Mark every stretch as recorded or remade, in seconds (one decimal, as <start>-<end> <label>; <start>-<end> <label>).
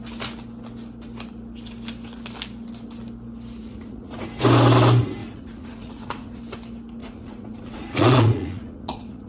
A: 0.0-3.6 recorded; 3.6-4.2 remade; 4.2-5.2 recorded; 5.2-6.4 remade; 6.4-7.0 recorded; 7.0-9.3 remade